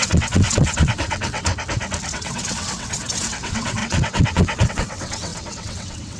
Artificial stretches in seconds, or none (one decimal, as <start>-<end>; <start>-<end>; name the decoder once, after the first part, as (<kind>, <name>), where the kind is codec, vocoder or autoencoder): 0.0-1.5 (vocoder, WaveNeXt); 2.1-6.2